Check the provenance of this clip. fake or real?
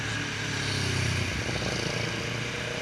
real